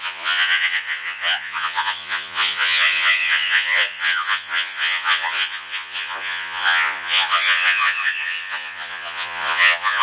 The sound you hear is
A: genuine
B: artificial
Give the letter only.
B